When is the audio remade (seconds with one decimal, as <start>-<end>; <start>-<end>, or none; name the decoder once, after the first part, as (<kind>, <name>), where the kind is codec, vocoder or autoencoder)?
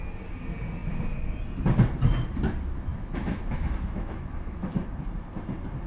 2.9-4.9 (autoencoder, DAC-VAE)